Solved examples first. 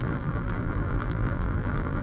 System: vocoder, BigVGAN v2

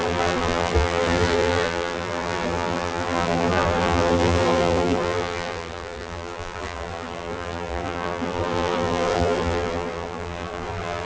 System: vocoder, BigVGAN v2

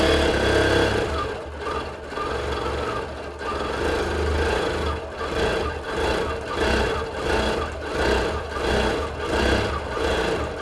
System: none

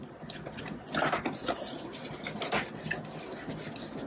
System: none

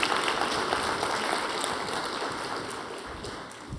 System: none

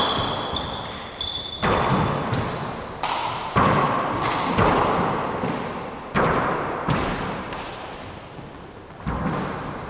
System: none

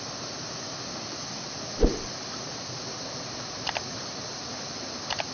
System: none